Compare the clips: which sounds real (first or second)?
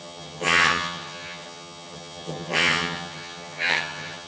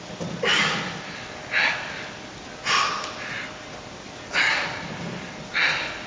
second